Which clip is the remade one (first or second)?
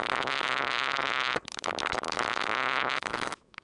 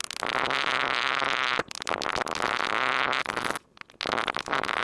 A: first